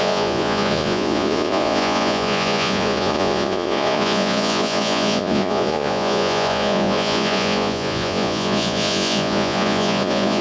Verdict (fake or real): fake